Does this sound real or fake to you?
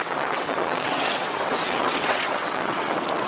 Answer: fake